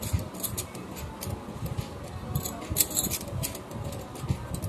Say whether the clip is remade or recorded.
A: recorded